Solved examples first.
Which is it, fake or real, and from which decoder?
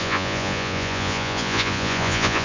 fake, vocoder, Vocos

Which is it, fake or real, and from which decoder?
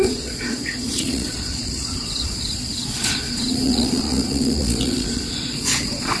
fake, vocoder, Vocos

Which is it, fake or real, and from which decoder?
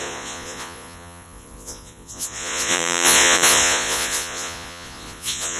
fake, vocoder, Vocos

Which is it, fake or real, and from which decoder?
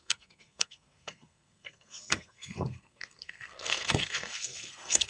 fake, codec, SNAC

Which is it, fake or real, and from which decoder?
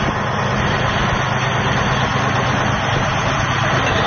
real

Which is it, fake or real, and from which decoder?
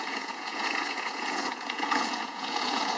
fake, vocoder, Vocos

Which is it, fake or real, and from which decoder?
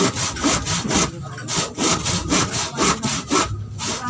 real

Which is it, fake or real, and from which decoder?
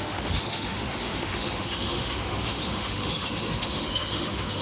fake, autoencoder, DAC-VAE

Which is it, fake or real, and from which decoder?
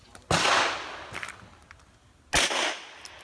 real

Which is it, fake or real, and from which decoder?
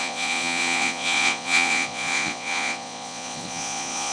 fake, vocoder, Vocos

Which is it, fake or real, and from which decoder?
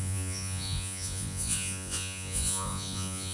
fake, vocoder, Vocos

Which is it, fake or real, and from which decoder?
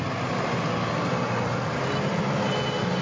real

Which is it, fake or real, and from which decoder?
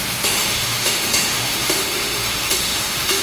fake, autoencoder, DAC-VAE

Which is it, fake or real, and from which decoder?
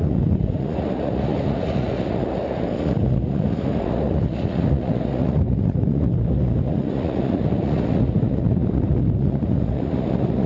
fake, vocoder, Vocos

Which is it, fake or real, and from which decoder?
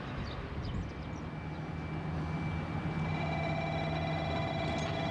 real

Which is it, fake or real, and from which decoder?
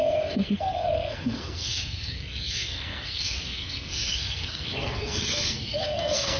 fake, codec, SNAC